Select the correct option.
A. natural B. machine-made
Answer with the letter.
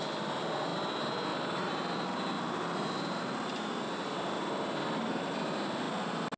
A